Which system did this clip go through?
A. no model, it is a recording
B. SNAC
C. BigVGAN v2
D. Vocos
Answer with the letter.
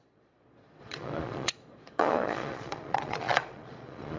D